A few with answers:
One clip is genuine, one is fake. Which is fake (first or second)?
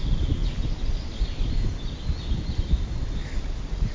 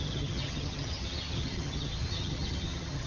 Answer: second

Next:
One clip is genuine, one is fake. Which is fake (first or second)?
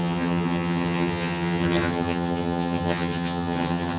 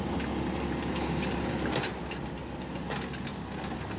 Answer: first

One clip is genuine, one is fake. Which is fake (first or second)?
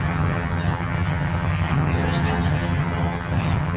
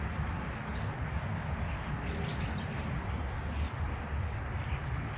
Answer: first